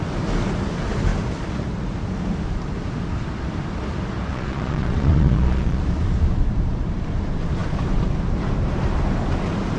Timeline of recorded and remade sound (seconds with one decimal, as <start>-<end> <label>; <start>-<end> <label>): 0.0-4.3 recorded; 4.3-5.8 remade; 5.8-9.8 recorded